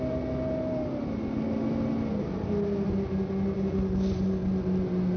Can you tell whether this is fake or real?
real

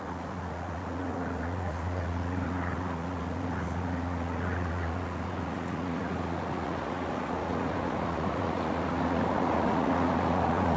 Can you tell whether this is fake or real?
fake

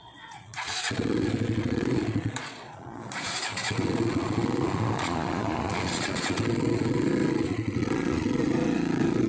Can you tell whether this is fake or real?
fake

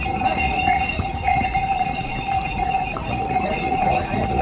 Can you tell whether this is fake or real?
fake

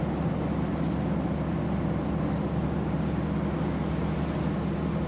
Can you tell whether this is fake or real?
real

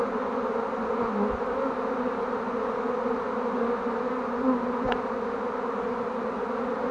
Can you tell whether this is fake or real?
real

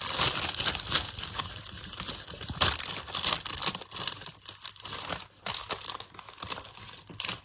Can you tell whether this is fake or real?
real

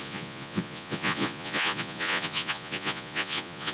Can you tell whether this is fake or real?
fake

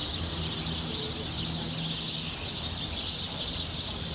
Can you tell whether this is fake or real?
real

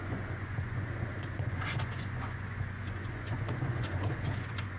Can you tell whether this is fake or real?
fake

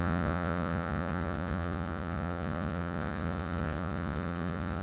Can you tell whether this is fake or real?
fake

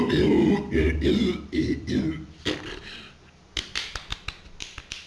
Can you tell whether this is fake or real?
real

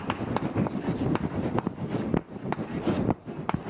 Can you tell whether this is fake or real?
real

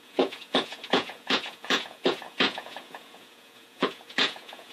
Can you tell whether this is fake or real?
fake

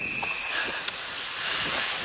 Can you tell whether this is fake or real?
fake